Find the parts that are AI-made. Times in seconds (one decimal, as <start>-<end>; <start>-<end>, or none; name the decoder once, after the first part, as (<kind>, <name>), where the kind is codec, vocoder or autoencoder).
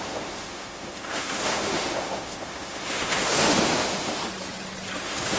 0.0-4.2 (autoencoder, DAC-VAE); 5.0-5.4